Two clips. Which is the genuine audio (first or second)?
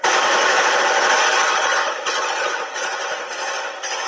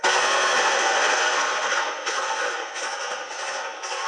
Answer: first